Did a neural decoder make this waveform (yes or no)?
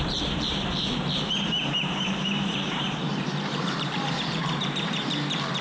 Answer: yes